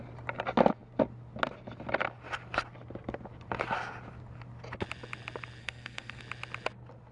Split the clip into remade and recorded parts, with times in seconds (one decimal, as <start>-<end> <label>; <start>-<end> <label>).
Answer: 0.0-5.6 recorded; 5.6-6.2 remade; 6.2-7.1 recorded